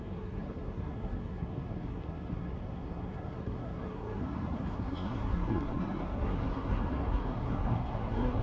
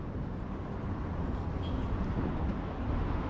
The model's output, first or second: first